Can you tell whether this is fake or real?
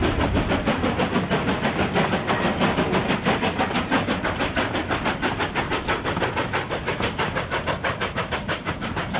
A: real